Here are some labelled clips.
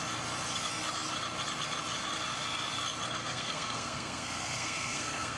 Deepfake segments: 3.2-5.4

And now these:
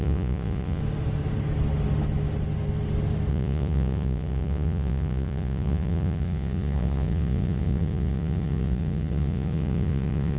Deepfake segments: 0.0-0.8; 3.3-10.4

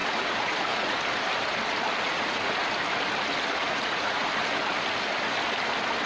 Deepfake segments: 0.0-1.0; 2.1-2.6; 3.6-4.3

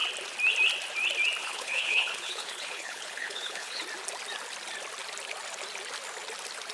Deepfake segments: 1.4-3.8